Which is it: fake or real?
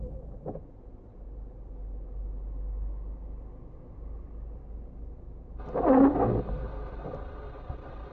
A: real